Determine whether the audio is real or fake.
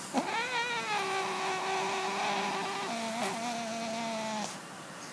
real